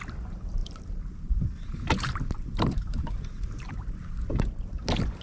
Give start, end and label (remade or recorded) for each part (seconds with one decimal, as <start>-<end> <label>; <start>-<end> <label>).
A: 0.0-5.2 recorded